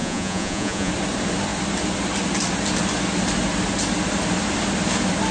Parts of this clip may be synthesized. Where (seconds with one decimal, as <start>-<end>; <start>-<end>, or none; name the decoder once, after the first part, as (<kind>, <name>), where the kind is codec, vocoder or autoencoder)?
0.0-0.9 (vocoder, Vocos)